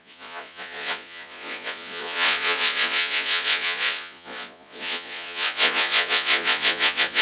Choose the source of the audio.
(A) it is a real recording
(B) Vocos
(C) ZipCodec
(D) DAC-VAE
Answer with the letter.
B